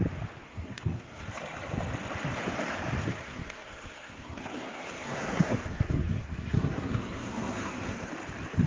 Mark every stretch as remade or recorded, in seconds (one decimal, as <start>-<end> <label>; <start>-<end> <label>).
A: 0.0-0.4 recorded; 0.4-1.3 remade; 1.3-3.1 recorded; 3.1-8.1 remade; 8.1-8.7 recorded